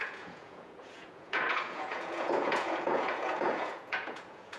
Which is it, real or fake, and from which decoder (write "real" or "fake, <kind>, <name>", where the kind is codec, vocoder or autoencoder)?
fake, vocoder, Vocos